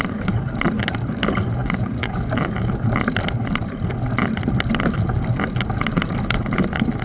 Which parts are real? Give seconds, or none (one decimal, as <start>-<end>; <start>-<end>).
0.0-1.6; 2.2-7.0

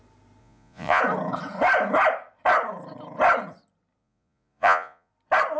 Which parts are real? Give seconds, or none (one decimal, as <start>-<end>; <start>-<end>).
0.0-0.4; 1.0-4.0; 5.1-5.6